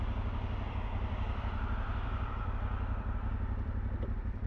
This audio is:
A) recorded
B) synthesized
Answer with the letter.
B